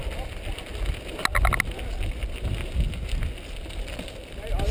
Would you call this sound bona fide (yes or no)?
yes